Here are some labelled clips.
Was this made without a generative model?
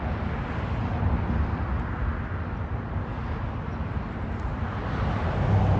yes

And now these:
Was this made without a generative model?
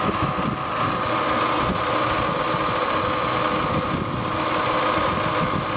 yes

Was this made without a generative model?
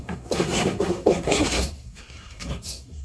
no